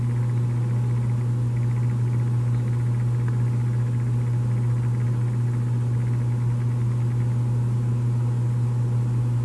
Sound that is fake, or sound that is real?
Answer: real